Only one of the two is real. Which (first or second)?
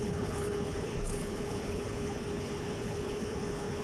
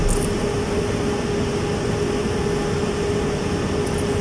second